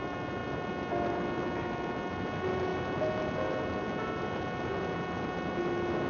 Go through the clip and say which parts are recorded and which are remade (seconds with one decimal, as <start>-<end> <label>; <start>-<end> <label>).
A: 0.0-6.1 recorded